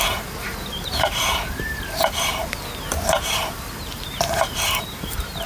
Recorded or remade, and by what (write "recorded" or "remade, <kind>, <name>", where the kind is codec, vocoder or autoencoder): remade, vocoder, BigVGAN v2